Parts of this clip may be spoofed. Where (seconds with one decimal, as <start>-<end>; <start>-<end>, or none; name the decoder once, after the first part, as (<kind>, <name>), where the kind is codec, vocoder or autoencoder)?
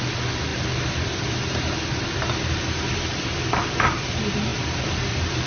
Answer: 4.5-5.5 (vocoder, BigVGAN v2)